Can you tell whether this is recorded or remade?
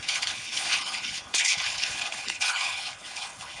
remade